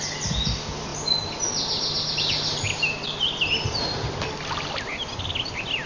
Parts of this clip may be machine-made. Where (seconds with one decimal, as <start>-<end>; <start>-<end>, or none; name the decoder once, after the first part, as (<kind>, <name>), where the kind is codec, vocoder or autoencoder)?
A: none

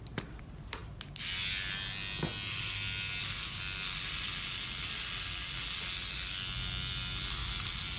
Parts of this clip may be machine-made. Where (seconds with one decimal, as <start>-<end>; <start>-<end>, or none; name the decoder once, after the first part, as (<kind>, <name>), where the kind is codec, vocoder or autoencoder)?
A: none

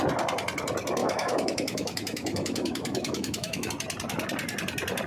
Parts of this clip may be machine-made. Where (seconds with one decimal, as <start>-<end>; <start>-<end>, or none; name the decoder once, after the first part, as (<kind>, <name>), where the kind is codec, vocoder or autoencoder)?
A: 1.0-3.7 (autoencoder, DAC-VAE)

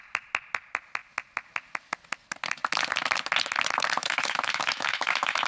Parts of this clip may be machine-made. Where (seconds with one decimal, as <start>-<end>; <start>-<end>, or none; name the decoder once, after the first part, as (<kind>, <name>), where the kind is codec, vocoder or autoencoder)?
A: 4.0-5.5 (autoencoder, DAC-VAE)

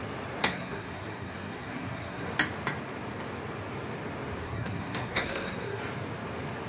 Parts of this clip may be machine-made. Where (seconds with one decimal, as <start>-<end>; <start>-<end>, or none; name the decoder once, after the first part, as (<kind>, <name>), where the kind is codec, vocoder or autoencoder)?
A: 0.4-2.3 (codec, SNAC); 4.4-5.8

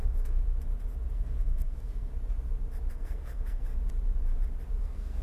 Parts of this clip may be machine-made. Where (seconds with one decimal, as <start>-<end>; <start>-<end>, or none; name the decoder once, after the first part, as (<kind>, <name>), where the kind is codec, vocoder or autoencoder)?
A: 0.0-0.4 (codec, SNAC); 1.1-2.1; 2.9-3.7; 4.8-5.2

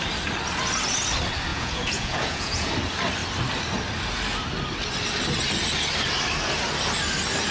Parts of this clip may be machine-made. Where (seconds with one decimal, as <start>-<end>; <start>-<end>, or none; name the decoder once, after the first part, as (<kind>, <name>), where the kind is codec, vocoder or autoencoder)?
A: 1.5-2.7 (vocoder, Vocos)